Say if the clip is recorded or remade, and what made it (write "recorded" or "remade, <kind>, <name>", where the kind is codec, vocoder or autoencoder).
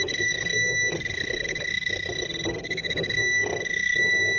remade, codec, SNAC